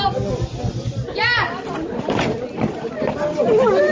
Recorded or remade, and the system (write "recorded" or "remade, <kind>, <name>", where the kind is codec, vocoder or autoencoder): recorded